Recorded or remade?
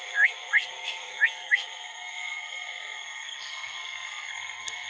remade